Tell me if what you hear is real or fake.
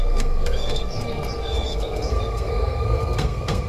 fake